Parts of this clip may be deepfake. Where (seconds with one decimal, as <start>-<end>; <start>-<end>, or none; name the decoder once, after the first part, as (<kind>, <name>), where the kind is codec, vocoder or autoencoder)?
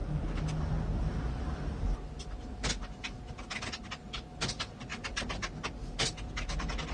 none